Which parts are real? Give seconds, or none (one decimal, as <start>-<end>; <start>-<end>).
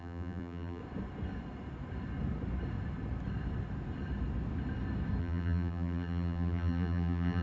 0.8-5.2